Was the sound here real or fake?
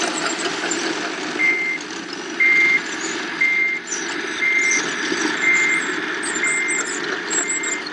real